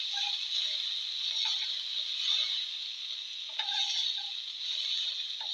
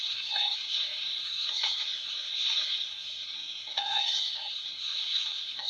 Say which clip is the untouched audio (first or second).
first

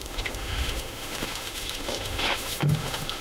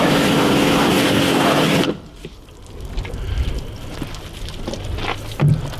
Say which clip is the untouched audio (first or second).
second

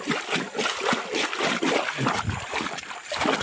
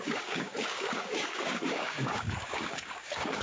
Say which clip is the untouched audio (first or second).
first